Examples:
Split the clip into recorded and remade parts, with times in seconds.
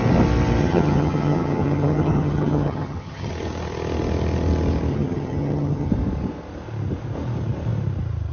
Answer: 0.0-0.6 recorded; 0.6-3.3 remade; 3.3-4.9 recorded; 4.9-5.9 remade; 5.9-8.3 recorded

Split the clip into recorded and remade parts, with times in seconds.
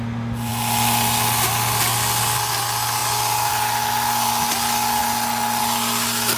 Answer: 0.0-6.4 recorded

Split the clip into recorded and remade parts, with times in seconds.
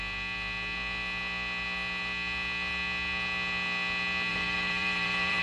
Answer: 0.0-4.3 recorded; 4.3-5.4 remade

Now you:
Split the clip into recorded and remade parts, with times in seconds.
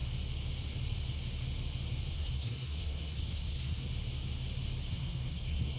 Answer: 0.0-2.1 recorded; 2.1-3.9 remade; 3.9-4.9 recorded; 4.9-5.8 remade